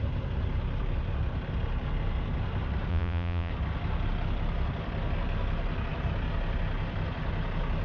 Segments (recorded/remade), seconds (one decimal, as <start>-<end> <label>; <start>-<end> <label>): 0.0-2.9 recorded; 2.9-3.5 remade; 3.5-7.8 recorded